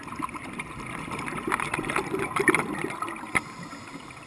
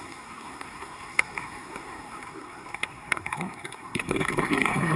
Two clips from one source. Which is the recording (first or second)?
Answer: first